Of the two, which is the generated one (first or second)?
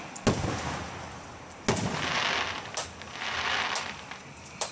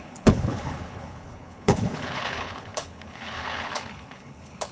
second